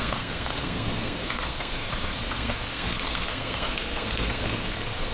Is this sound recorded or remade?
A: remade